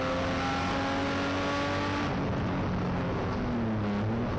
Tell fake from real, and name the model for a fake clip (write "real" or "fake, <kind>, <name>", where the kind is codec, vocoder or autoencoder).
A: real